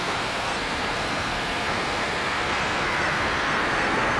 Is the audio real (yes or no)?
no